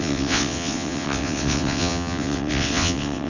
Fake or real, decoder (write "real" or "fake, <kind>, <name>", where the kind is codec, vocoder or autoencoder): fake, vocoder, WaveNeXt